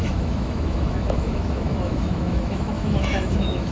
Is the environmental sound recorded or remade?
remade